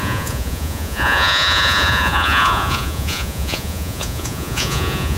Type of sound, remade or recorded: remade